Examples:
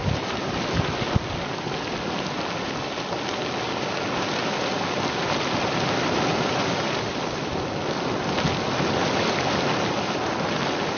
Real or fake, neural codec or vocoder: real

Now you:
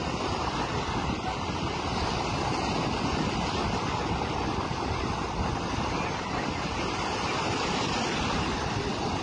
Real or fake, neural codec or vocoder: real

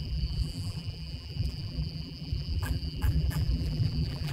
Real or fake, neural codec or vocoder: fake, vocoder, BigVGAN v2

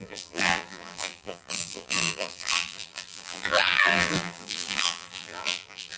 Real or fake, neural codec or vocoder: fake, vocoder, BigVGAN v2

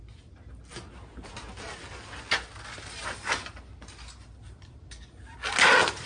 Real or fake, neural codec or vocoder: real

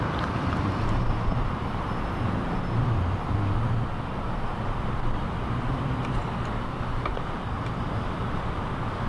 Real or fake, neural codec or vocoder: fake, vocoder, BigVGAN v2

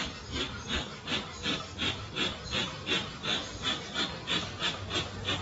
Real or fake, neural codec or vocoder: real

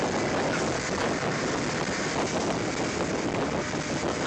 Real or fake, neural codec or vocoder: real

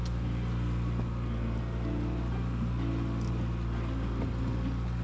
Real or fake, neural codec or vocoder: real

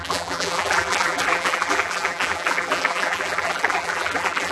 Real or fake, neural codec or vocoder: fake, vocoder, BigVGAN v2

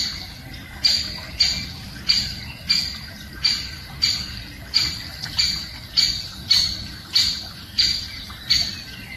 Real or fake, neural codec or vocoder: fake, vocoder, BigVGAN v2